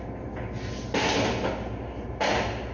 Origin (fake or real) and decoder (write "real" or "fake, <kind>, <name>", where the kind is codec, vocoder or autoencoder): real